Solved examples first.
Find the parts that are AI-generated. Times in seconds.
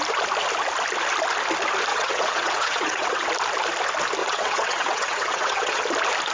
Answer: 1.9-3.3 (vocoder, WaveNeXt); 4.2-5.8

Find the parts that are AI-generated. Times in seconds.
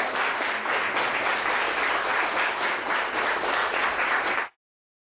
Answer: 3.6-4.3 (vocoder, Vocos)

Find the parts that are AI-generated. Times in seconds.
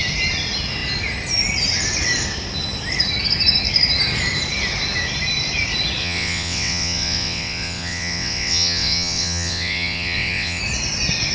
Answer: 6.0-10.6 (vocoder, WaveNeXt)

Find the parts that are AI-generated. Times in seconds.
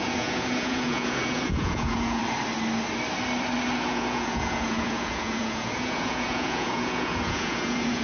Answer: 0.0-2.2 (vocoder, Vocos); 3.9-8.0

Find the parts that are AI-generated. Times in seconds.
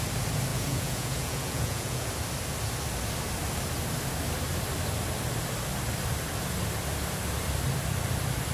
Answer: 0.5-2.1 (vocoder, Vocos)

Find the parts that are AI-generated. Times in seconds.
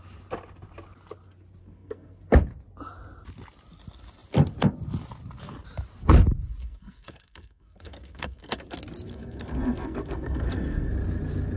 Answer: 1.6-2.2 (codec, SNAC); 6.6-8.6; 9.1-10.9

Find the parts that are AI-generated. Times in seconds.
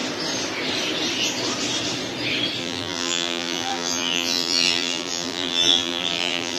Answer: 2.6-6.6 (vocoder, BigVGAN v2)